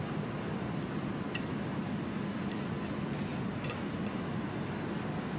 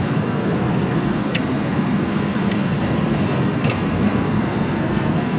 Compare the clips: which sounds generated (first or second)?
second